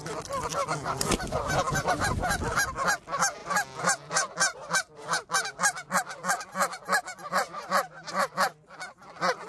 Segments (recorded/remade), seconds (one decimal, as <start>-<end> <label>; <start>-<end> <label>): 0.0-9.5 recorded